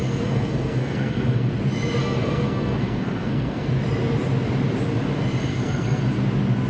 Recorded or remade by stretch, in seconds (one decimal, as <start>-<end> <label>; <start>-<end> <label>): 0.0-1.5 remade; 1.5-2.0 recorded; 2.0-3.7 remade; 3.7-5.5 recorded; 5.5-6.0 remade; 6.0-6.7 recorded

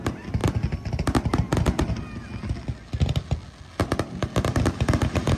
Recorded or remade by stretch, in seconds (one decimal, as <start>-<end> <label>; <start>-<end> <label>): 0.0-5.4 recorded